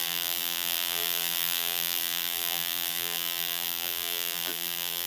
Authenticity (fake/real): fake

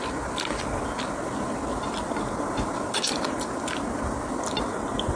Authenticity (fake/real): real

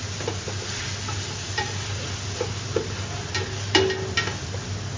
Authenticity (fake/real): real